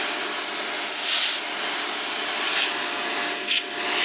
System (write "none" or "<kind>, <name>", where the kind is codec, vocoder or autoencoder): none